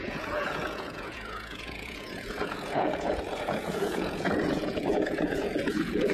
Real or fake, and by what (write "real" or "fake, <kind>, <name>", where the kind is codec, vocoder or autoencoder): fake, vocoder, Vocos